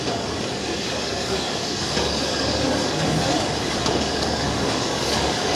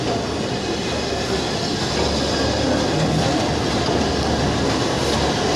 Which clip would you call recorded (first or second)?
second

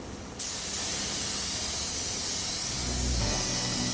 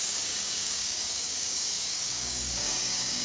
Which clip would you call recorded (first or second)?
first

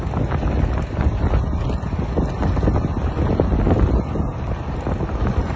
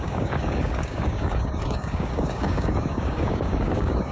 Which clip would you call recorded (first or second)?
first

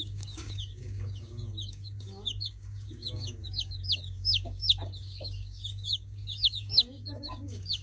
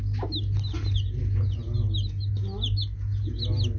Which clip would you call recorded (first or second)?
second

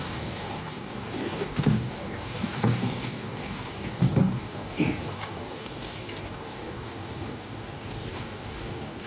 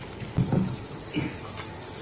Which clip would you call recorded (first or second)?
second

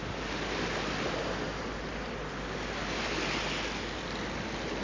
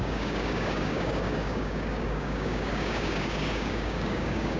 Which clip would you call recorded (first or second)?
first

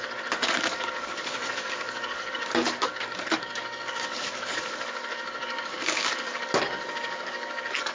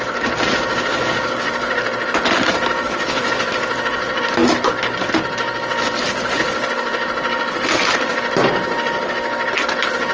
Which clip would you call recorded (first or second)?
second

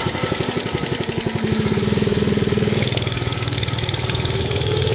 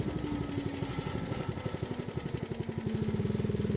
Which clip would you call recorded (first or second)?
second